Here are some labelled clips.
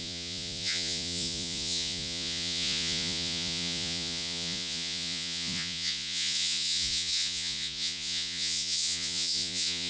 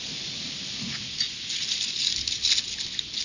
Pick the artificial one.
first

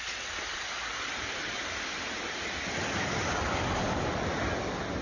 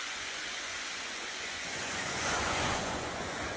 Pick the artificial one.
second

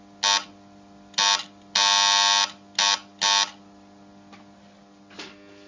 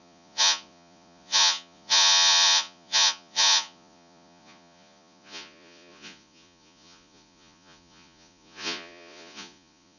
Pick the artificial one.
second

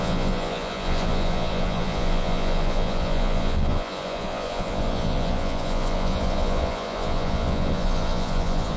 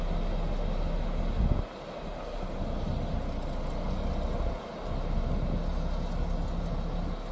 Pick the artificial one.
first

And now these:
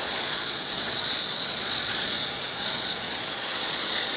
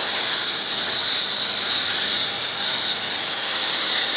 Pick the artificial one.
first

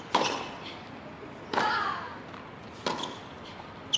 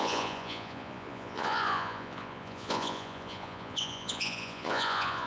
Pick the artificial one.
second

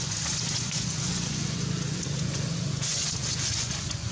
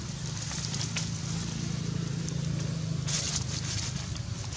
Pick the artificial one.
first